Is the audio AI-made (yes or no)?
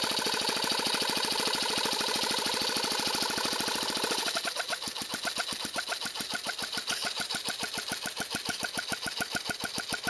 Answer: no